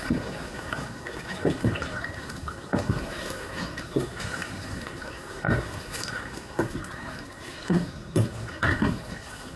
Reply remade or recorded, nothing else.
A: remade